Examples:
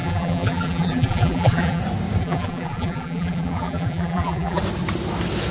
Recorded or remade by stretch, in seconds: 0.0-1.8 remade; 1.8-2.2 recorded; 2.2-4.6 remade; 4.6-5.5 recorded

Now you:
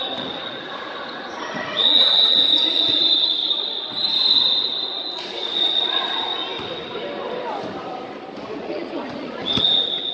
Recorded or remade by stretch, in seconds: 0.0-3.4 remade; 3.4-4.3 recorded; 4.3-6.4 remade; 6.4-8.5 recorded; 8.5-10.1 remade

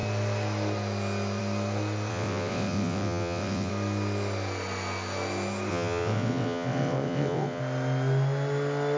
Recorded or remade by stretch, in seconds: 0.0-2.1 recorded; 2.1-3.7 remade; 3.7-5.7 recorded; 5.7-7.6 remade; 7.6-9.0 recorded